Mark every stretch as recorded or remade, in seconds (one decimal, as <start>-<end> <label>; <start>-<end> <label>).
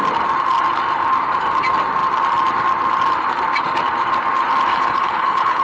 0.0-4.7 recorded; 4.7-5.6 remade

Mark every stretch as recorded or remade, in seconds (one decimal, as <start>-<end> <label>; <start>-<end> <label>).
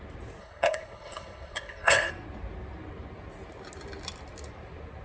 0.0-0.4 recorded; 0.4-2.1 remade; 2.1-5.0 recorded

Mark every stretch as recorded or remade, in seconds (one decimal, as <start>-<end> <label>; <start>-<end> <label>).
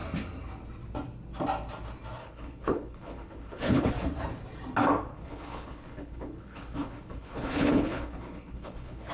0.0-2.2 recorded; 2.2-3.9 remade; 3.9-5.1 recorded; 5.1-9.1 remade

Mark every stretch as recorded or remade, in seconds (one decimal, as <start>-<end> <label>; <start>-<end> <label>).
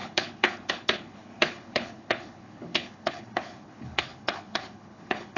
0.0-5.4 remade